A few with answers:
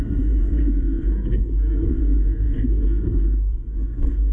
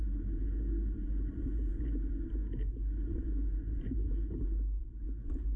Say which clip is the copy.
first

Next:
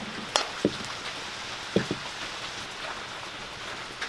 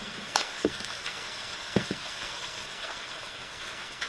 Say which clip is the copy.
second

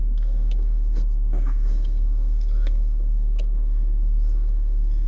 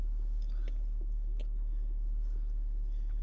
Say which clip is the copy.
first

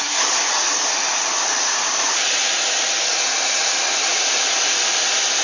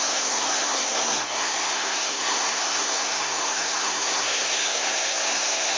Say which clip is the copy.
second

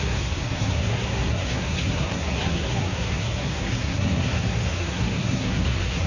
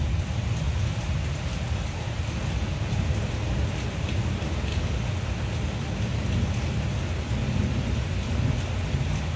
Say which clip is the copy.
first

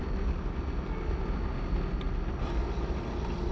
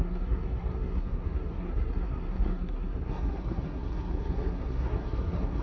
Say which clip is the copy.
second